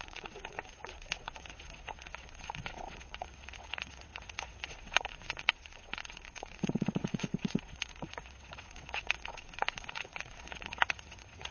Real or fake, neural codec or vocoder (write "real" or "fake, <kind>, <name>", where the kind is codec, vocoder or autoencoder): fake, vocoder, WaveNeXt